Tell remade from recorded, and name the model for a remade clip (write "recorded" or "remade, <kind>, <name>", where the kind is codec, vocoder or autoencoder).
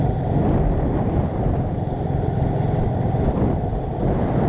recorded